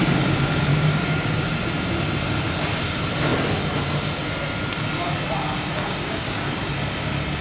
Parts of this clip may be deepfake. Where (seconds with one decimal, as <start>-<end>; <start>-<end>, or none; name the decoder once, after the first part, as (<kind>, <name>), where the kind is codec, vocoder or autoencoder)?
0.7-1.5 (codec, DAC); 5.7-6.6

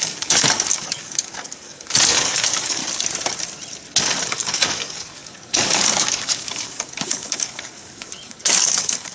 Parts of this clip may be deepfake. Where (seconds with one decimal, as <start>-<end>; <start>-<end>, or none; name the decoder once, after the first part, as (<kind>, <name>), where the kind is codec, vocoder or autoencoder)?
0.0-2.8 (codec, DAC); 4.2-9.1

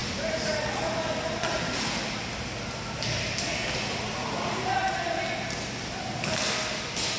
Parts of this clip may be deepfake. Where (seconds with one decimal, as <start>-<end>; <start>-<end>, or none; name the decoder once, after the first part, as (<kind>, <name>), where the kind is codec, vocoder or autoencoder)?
none

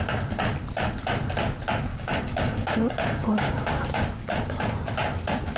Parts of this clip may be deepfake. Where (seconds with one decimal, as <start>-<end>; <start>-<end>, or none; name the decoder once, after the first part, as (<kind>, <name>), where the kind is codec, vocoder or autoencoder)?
1.9-3.7 (codec, DAC)

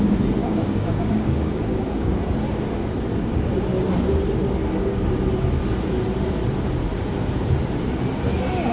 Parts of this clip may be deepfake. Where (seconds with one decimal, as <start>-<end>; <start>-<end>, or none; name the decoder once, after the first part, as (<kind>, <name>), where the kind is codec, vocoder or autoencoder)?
0.4-2.1 (codec, DAC)